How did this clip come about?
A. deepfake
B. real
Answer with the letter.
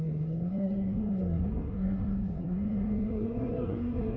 A